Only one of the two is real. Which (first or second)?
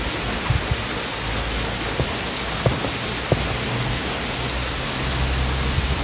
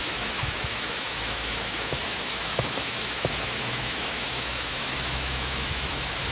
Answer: first